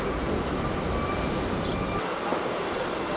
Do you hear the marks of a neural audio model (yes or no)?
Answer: no